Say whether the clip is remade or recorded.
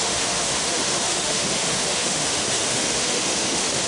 remade